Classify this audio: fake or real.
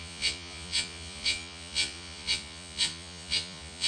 fake